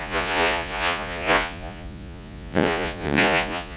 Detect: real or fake fake